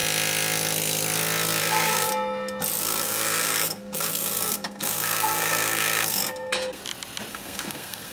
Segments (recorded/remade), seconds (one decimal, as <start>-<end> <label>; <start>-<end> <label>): 0.0-1.6 recorded; 1.6-2.1 remade; 2.1-2.8 recorded; 2.8-6.8 remade; 6.8-7.3 recorded; 7.3-8.1 remade